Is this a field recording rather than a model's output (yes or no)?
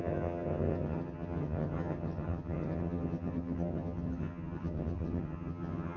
no